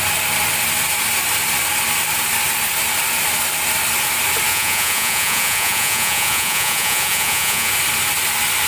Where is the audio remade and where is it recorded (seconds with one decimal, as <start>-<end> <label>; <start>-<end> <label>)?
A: 0.0-4.5 recorded; 4.5-7.7 remade; 7.7-8.7 recorded